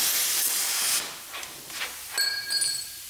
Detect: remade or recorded recorded